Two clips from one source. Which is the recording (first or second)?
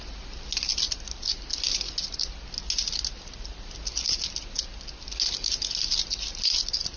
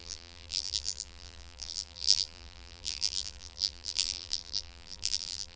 first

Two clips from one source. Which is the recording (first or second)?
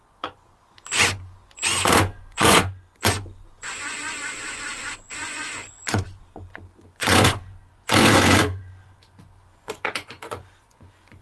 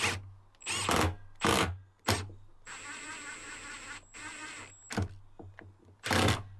second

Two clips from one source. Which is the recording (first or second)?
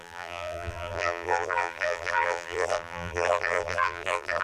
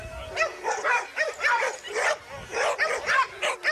second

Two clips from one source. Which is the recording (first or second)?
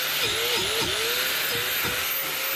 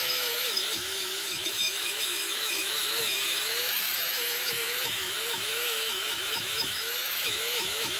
first